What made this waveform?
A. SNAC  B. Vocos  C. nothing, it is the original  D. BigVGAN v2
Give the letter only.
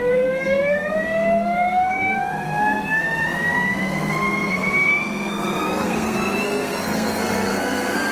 A